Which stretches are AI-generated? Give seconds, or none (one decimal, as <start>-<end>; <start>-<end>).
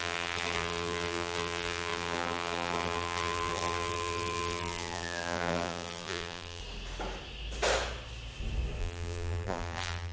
0.0-6.6; 8.8-10.1